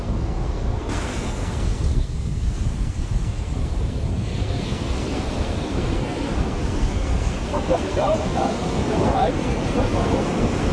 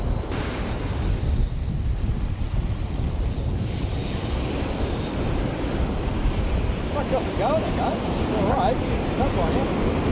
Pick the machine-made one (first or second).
first